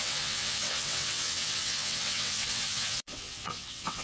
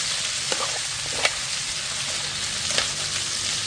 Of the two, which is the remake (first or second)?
first